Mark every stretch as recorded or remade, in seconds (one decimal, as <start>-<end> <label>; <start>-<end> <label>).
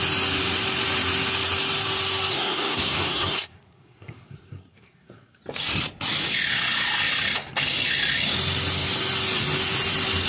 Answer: 0.0-2.3 recorded; 2.3-5.4 remade; 5.4-10.3 recorded